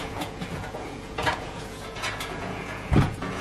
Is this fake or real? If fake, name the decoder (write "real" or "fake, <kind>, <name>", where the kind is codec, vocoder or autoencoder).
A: fake, vocoder, Vocos